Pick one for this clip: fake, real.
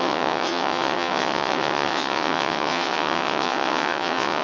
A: fake